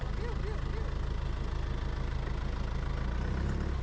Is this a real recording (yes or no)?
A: yes